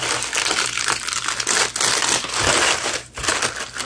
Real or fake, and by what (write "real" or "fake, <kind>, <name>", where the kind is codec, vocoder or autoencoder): real